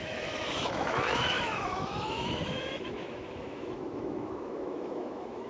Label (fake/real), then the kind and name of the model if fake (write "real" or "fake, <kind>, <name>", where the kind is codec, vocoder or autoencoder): fake, autoencoder, DAC-VAE